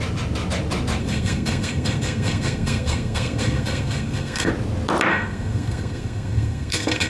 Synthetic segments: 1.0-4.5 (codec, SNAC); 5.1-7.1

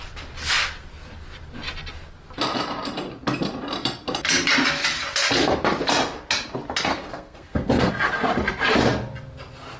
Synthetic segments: 6.9-7.9 (codec, SNAC)